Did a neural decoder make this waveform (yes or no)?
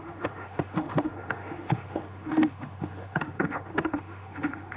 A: yes